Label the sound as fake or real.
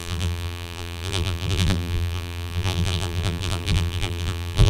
fake